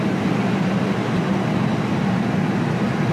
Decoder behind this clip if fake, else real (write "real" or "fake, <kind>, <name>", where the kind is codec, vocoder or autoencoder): real